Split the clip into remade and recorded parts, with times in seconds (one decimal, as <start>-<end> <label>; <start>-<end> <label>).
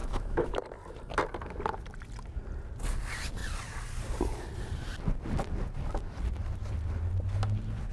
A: 0.0-0.6 remade; 0.6-7.9 recorded